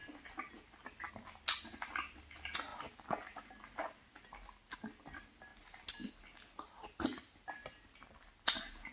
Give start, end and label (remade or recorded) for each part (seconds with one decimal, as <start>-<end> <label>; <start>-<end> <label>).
0.0-8.9 recorded